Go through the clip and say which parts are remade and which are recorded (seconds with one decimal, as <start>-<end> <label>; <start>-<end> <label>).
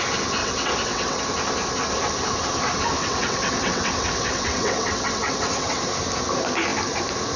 0.0-0.4 recorded; 0.4-1.2 remade; 1.2-3.0 recorded; 3.0-5.8 remade; 5.8-7.4 recorded